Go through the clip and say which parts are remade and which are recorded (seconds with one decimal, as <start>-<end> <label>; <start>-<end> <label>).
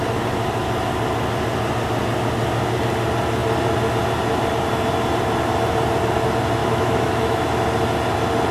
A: 0.0-6.6 recorded; 6.6-7.4 remade; 7.4-8.5 recorded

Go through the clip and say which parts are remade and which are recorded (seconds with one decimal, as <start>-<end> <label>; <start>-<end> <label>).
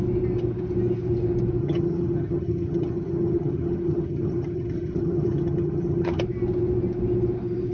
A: 0.0-1.6 recorded; 1.6-6.2 remade; 6.2-7.7 recorded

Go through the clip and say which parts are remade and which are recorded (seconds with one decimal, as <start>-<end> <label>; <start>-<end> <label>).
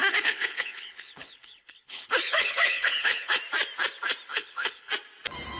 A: 0.0-3.4 remade; 3.4-4.3 recorded; 4.3-4.9 remade; 4.9-5.6 recorded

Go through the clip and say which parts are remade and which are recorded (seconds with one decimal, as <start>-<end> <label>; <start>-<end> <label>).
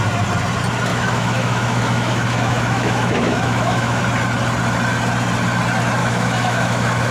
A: 0.0-0.9 recorded; 0.9-4.0 remade; 4.0-6.0 recorded; 6.0-7.1 remade